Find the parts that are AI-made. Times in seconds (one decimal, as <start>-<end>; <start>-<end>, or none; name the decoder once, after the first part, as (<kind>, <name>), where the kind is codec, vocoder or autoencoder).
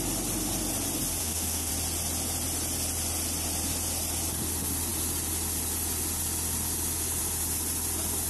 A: 1.2-1.7 (autoencoder, DAC-VAE)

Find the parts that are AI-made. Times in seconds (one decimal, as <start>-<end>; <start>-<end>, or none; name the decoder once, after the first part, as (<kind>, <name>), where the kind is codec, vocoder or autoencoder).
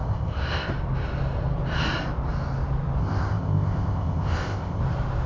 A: 0.0-0.7 (codec, ZipCodec); 3.0-4.8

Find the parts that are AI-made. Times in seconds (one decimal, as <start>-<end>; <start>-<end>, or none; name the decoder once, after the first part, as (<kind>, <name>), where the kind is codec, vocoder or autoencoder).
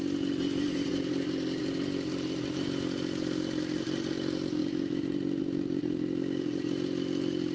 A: none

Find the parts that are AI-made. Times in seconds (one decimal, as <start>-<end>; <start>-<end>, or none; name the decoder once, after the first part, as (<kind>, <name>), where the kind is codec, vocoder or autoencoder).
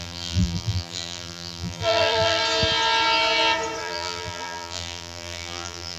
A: 0.0-2.4 (vocoder, BigVGAN v2); 3.8-6.0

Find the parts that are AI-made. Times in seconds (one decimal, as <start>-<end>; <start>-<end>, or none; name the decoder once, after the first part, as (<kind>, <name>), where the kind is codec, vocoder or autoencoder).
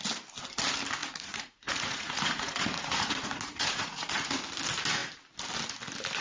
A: 1.0-4.3 (vocoder, Vocos)